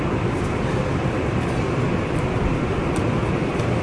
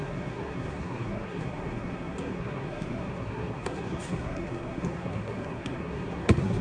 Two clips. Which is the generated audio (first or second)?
second